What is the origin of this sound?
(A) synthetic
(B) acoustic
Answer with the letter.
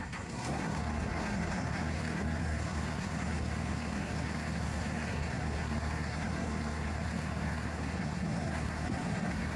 A